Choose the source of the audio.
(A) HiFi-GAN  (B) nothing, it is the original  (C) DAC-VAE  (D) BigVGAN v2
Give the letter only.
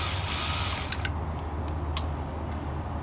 B